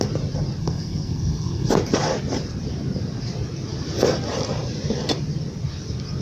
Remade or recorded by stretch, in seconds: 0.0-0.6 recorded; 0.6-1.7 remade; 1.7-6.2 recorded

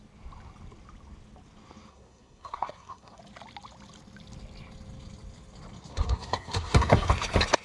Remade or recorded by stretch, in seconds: 0.0-1.9 recorded; 1.9-3.2 remade; 3.2-5.9 recorded; 5.9-7.1 remade; 7.1-7.6 recorded

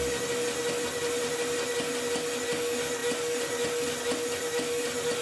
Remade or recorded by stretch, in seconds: 0.0-5.2 recorded

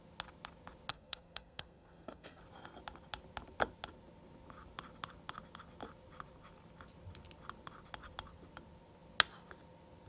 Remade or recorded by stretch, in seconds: 0.0-0.9 recorded; 0.9-2.4 remade; 2.4-10.1 recorded

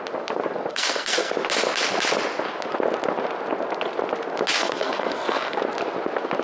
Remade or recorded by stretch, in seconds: 0.0-0.7 recorded; 0.7-1.3 remade; 1.3-4.6 recorded; 4.6-5.6 remade; 5.6-6.4 recorded

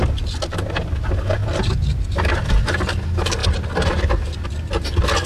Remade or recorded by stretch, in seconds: 0.0-5.3 recorded

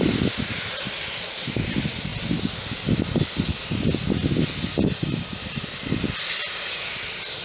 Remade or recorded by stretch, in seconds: 0.0-7.4 recorded

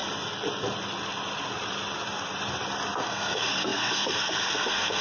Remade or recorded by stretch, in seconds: 0.0-3.0 recorded; 3.0-5.0 remade